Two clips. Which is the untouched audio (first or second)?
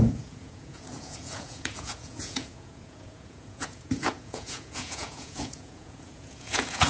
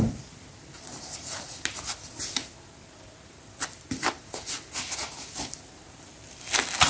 second